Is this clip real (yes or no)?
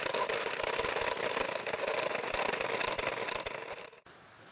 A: yes